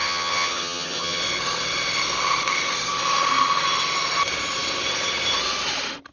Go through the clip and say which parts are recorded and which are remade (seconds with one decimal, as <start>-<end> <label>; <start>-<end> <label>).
0.0-1.2 remade; 1.2-6.1 recorded